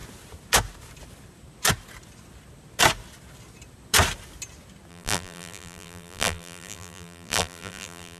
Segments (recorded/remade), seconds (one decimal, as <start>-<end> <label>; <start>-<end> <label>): 0.0-4.9 recorded; 4.9-8.2 remade

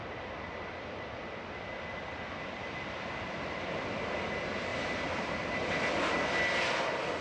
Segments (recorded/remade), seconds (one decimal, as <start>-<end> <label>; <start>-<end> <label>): 0.0-4.3 remade; 4.3-4.7 recorded; 4.7-5.7 remade; 5.7-7.2 recorded

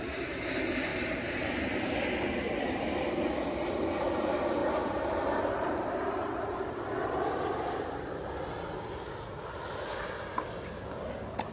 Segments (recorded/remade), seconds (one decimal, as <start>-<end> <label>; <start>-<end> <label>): 0.0-0.9 recorded; 0.9-1.9 remade; 1.9-4.6 recorded; 4.6-7.5 remade; 7.5-11.5 recorded

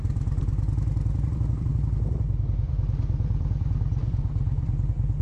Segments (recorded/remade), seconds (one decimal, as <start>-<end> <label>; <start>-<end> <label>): 0.0-5.2 remade

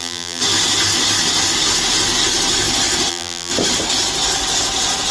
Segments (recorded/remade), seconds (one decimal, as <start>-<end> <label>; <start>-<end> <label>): 0.0-0.4 remade; 0.4-3.1 recorded; 3.1-3.5 remade; 3.5-5.1 recorded

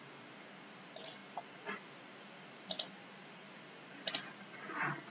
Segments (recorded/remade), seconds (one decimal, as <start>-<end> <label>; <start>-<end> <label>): 0.0-5.1 remade

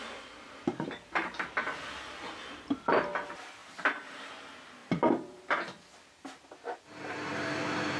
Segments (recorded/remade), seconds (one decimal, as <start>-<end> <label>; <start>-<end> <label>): 0.0-3.6 recorded; 3.6-4.3 remade; 4.3-4.8 recorded; 4.8-5.6 remade; 5.6-7.3 recorded; 7.3-8.0 remade

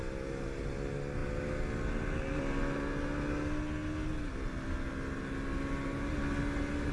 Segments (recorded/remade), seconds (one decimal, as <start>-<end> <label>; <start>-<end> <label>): 0.0-6.9 recorded